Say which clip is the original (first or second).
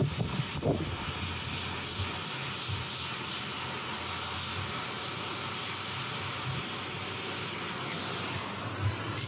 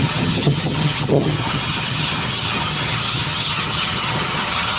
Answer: first